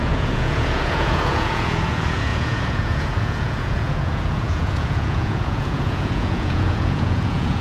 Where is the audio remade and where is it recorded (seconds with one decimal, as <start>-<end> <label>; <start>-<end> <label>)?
0.0-7.6 remade